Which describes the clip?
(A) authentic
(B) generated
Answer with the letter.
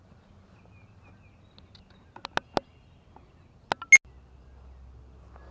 A